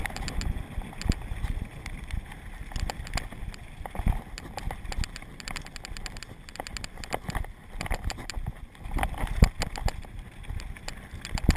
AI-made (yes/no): no